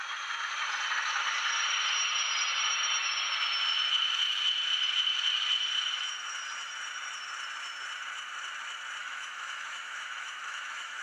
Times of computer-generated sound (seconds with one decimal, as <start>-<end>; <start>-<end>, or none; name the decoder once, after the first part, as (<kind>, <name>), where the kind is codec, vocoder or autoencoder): 9.0-11.0 (autoencoder, DAC-VAE)